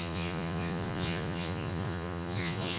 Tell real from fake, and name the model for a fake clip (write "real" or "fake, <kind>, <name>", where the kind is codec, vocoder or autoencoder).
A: fake, vocoder, Vocos